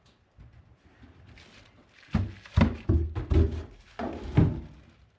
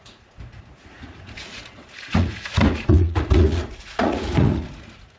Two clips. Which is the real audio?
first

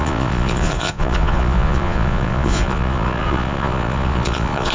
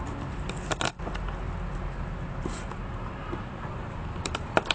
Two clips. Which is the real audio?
second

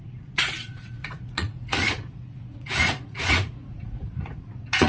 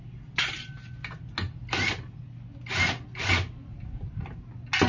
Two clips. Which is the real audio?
second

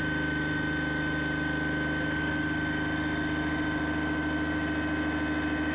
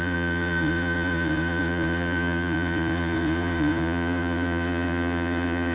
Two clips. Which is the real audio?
first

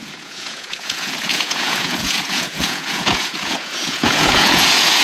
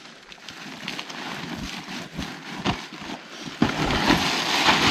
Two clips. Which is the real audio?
second